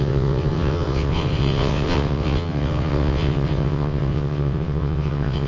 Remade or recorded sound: remade